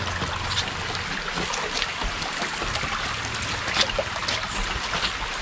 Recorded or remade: recorded